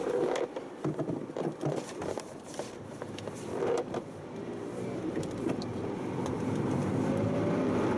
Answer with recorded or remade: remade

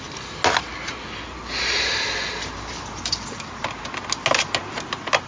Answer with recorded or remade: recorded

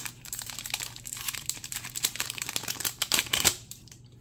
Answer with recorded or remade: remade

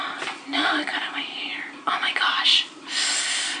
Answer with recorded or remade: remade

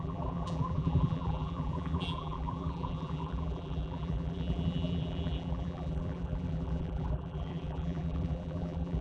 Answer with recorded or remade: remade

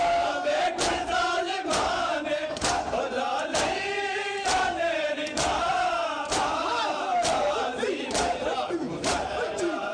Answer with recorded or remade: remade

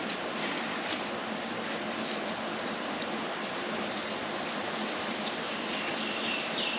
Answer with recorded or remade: remade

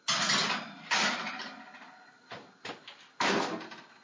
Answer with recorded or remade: recorded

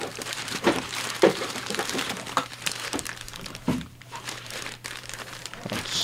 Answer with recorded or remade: remade